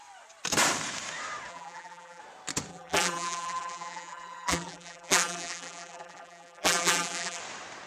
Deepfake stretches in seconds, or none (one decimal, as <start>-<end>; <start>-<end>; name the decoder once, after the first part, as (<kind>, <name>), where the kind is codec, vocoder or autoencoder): 1.5-2.2 (vocoder, BigVGAN v2); 2.7-7.4